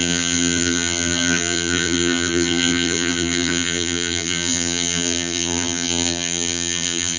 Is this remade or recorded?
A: remade